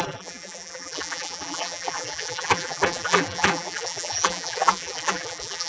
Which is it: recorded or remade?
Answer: remade